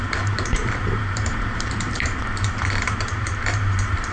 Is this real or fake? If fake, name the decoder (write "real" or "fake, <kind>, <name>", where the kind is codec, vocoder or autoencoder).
fake, vocoder, BigVGAN v2